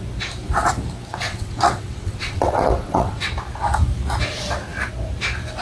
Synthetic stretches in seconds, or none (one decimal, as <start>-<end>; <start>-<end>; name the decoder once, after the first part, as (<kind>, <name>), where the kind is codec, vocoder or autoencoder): 1.1-3.3 (vocoder, WaveNeXt)